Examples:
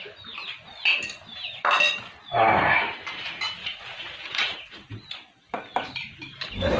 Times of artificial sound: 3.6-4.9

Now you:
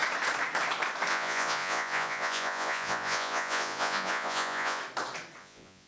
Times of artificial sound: 1.1-4.8; 5.4-5.9